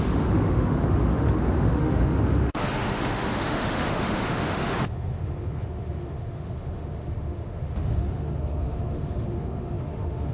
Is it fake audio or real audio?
fake